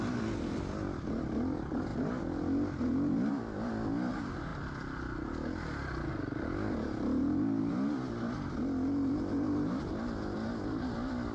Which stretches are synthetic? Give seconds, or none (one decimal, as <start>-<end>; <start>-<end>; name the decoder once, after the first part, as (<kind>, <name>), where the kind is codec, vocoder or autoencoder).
none